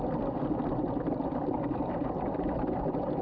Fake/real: real